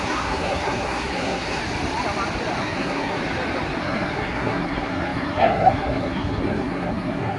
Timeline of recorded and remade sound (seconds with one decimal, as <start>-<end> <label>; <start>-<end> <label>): 0.0-1.6 remade; 1.6-2.6 recorded; 2.6-3.2 remade; 3.2-3.8 recorded; 3.8-7.4 remade